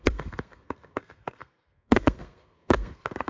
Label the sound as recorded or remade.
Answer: remade